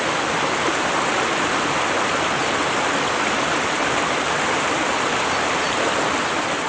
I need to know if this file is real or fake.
real